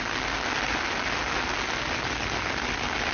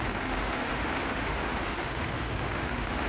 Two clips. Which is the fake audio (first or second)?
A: second